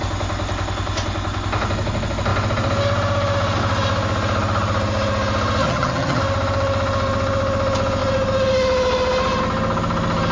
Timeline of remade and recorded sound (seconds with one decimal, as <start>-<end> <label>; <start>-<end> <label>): 0.0-5.6 recorded; 5.6-6.2 remade; 6.2-10.3 recorded